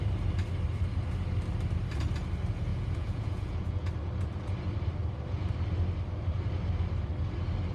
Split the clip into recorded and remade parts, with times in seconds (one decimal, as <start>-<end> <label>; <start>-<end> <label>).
0.0-2.7 recorded; 2.7-3.9 remade; 3.9-7.7 recorded